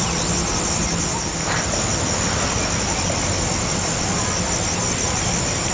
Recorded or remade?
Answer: recorded